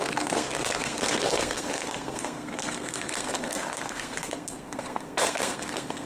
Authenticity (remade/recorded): remade